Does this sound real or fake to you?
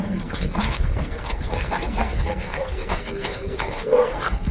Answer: fake